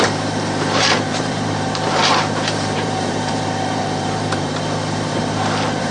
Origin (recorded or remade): remade